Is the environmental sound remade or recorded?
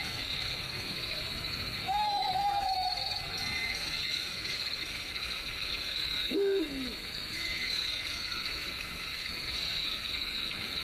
remade